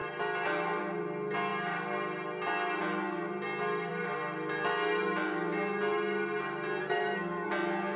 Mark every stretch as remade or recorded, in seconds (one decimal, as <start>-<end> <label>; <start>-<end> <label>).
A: 0.0-6.8 recorded; 6.8-7.5 remade; 7.5-8.0 recorded